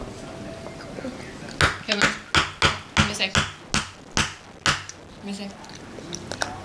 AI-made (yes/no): no